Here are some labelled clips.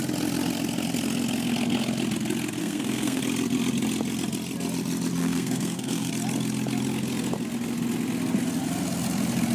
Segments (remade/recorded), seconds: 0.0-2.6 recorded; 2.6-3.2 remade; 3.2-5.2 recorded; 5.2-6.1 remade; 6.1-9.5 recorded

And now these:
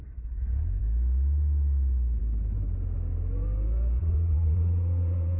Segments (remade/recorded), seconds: 0.0-4.0 recorded; 4.0-5.4 remade

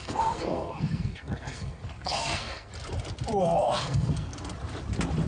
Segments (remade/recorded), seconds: 0.0-2.7 remade; 2.7-3.4 recorded; 3.4-4.3 remade; 4.3-5.3 recorded

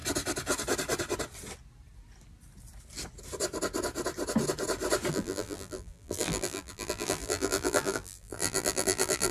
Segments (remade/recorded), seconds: 0.0-5.1 recorded; 5.1-9.3 remade

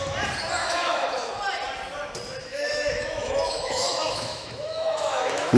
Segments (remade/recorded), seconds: 0.0-0.6 recorded; 0.6-1.3 remade; 1.3-2.4 recorded; 2.4-5.6 remade

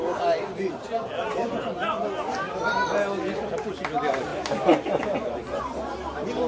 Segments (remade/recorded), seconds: 0.0-6.5 recorded